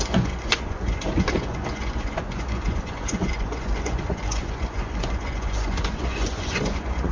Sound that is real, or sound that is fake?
fake